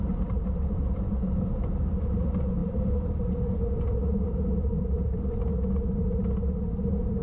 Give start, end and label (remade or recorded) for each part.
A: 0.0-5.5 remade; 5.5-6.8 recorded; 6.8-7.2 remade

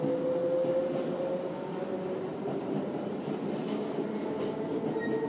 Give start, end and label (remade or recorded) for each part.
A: 0.0-2.3 recorded; 2.3-3.5 remade; 3.5-5.3 recorded

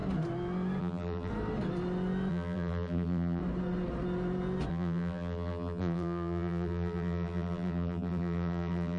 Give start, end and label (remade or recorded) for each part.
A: 0.0-0.8 recorded; 0.8-1.3 remade; 1.3-2.3 recorded; 2.3-3.4 remade; 3.4-4.7 recorded; 4.7-9.0 remade

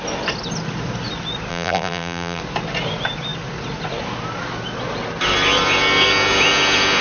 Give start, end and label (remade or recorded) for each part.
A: 0.0-1.5 recorded; 1.5-2.4 remade; 2.4-7.0 recorded

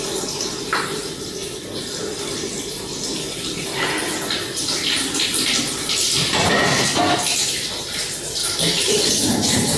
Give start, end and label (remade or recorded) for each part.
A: 0.0-1.4 recorded; 1.4-6.5 remade; 6.5-8.4 recorded; 8.4-9.1 remade; 9.1-9.8 recorded

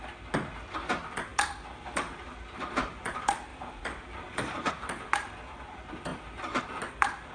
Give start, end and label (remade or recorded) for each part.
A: 0.0-3.5 recorded; 3.5-4.7 remade; 4.7-6.1 recorded; 6.1-6.6 remade; 6.6-7.3 recorded